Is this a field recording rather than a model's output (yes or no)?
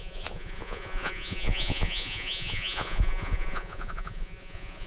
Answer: no